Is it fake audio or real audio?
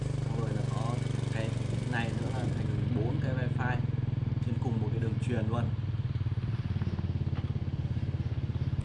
real